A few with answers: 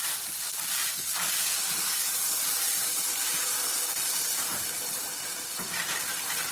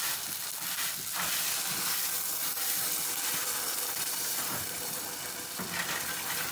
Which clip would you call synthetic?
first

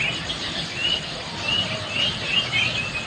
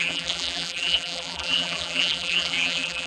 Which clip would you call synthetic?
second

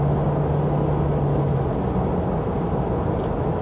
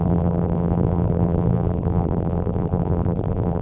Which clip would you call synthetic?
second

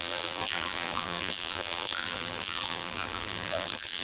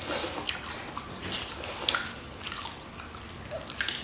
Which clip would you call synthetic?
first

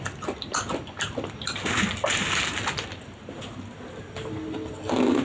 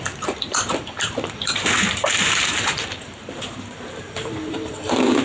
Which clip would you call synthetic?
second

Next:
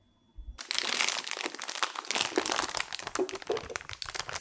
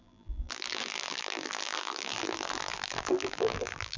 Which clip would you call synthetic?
second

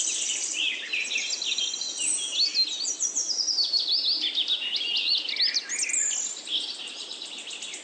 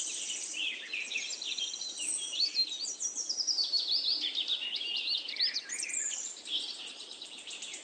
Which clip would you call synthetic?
second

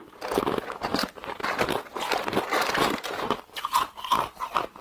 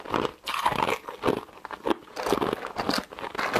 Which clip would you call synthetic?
first